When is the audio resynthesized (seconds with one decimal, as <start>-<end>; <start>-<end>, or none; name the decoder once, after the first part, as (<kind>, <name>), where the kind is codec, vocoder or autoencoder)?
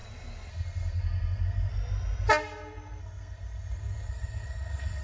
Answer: 0.5-1.7 (codec, SNAC); 3.0-5.0